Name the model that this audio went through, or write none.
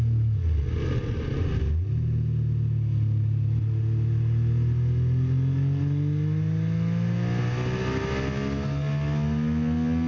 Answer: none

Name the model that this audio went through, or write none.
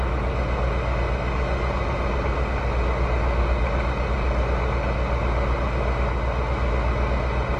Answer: none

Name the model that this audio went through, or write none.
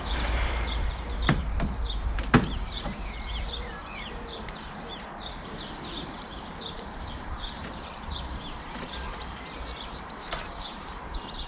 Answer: vocoder, BigVGAN v2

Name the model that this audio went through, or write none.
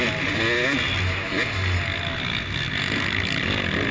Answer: none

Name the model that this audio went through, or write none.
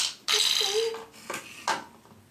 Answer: none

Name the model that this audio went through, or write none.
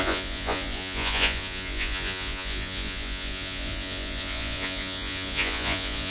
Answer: vocoder, Vocos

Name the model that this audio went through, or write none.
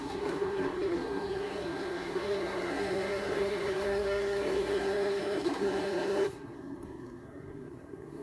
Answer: codec, SNAC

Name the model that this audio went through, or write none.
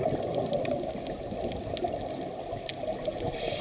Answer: none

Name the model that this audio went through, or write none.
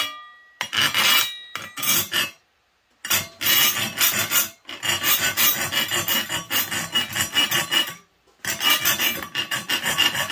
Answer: none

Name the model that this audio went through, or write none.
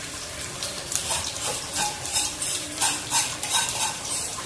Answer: vocoder, BigVGAN v2